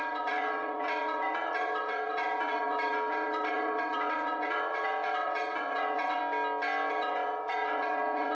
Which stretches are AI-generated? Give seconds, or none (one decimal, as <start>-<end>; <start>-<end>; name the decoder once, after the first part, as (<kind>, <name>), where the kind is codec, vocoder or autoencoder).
0.0-6.2 (vocoder, WaveNeXt); 6.9-8.3